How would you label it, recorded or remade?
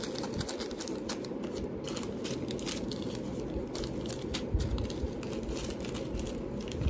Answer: recorded